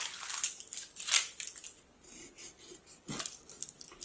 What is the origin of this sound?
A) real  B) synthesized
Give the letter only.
A